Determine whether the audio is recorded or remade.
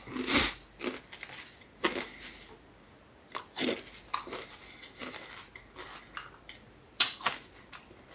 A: recorded